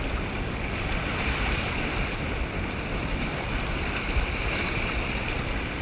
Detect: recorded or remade recorded